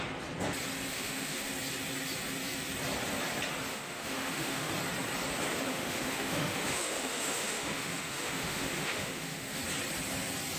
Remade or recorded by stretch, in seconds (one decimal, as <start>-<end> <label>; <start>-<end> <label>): 0.0-0.9 recorded; 0.9-1.5 remade; 1.5-3.7 recorded; 3.7-4.7 remade; 4.7-5.7 recorded; 5.7-9.6 remade; 9.6-10.6 recorded